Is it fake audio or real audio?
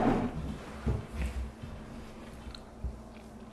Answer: real